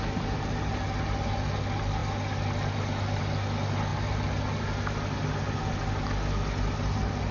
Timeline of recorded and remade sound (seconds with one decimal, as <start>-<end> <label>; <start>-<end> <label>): 0.0-7.3 recorded